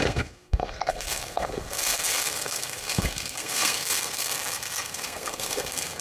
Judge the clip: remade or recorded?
remade